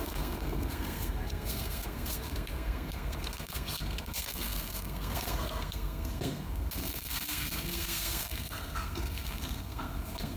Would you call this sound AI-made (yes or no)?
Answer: yes